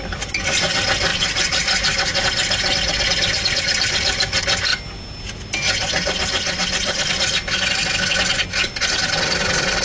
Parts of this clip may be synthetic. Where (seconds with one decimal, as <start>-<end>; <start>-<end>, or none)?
none